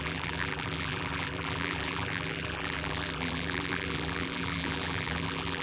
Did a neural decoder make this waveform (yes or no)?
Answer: yes